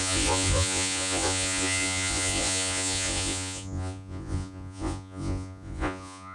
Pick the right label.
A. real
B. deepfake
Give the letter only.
B